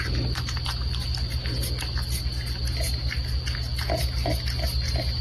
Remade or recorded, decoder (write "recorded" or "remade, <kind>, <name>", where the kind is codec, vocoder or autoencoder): recorded